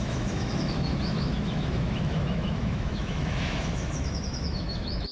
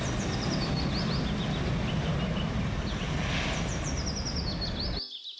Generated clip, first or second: first